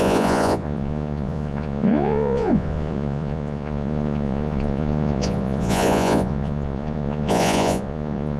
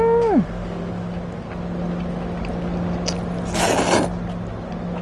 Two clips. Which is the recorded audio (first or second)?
second